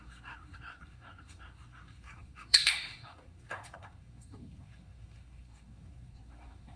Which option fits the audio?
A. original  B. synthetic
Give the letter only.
B